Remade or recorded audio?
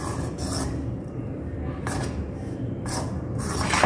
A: recorded